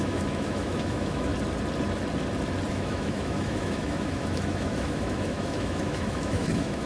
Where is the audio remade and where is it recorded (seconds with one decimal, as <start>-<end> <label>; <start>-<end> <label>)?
0.0-1.3 remade; 1.3-2.7 recorded; 2.7-6.9 remade